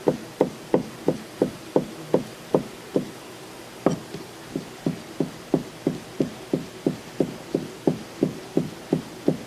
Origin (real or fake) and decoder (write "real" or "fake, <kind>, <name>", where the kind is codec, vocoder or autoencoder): real